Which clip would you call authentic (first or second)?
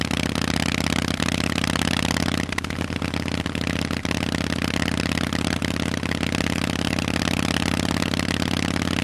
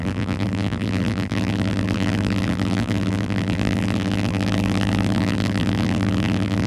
first